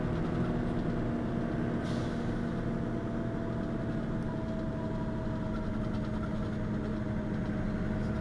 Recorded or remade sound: recorded